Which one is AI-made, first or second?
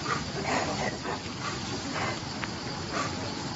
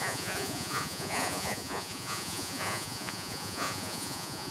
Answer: second